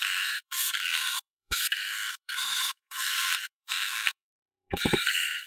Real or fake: fake